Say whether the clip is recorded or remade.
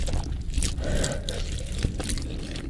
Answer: recorded